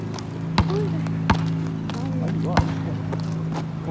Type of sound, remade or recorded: recorded